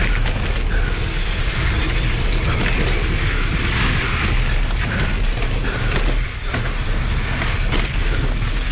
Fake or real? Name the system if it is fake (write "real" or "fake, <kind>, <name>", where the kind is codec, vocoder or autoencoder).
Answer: real